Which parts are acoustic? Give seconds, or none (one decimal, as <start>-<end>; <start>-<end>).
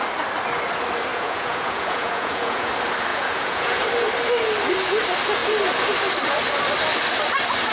0.0-1.1; 2.7-3.1; 3.8-7.7